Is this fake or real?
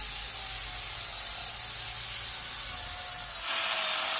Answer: real